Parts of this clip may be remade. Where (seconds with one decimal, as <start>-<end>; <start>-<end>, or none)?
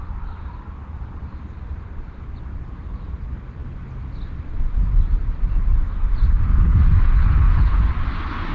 6.5-7.9